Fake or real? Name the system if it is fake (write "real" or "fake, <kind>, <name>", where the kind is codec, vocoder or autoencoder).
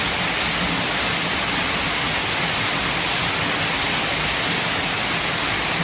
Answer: real